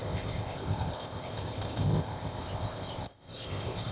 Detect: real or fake fake